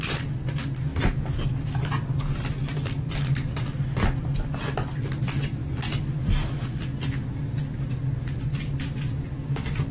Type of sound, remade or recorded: recorded